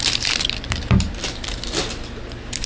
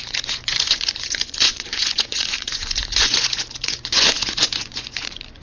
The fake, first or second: second